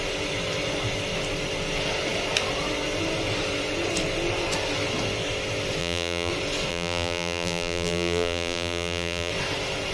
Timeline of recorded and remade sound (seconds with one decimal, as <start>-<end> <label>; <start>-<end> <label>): 0.0-5.8 recorded; 5.8-6.3 remade; 6.3-6.7 recorded; 6.7-9.3 remade; 9.3-9.9 recorded